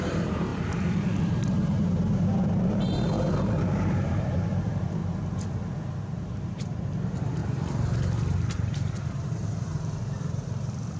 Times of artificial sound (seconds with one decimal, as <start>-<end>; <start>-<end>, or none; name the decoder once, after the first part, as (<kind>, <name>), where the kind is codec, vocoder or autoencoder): 0.0-0.5 (vocoder, BigVGAN v2); 1.2-5.0; 6.4-7.4; 8.5-11.0